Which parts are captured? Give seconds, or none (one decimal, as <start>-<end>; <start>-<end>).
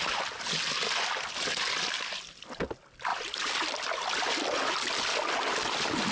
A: 0.0-3.1; 4.6-6.1